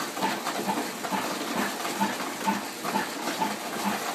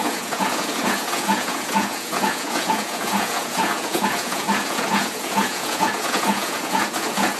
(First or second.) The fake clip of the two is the second